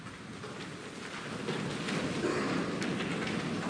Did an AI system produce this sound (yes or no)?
no